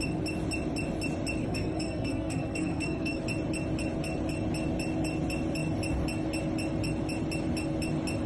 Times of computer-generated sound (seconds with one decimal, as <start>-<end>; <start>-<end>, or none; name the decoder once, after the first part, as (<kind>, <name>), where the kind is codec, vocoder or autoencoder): 1.4-3.2 (codec, SNAC)